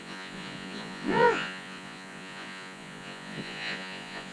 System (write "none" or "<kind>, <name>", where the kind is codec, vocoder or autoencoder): vocoder, Vocos